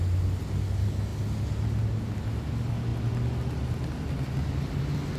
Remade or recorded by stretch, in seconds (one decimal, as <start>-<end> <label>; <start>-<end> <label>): 0.0-5.2 recorded